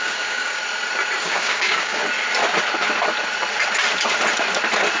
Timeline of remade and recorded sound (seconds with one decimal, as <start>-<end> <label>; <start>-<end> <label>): 0.0-0.6 remade; 0.6-1.2 recorded; 1.2-2.0 remade; 2.0-5.0 recorded